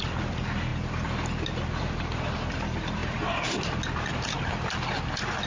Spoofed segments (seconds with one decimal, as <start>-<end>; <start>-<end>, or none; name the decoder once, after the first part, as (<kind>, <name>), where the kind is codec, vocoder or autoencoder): none